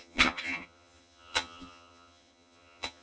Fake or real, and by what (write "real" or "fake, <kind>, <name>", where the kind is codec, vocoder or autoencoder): fake, vocoder, HiFi-GAN